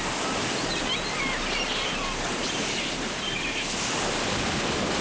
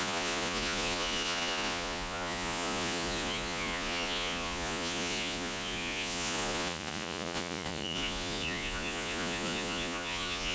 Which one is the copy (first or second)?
second